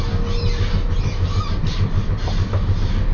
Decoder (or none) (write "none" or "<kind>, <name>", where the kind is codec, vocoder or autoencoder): none